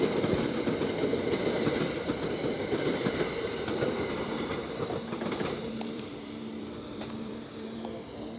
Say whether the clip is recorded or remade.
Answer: remade